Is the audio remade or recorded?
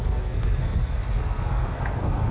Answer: remade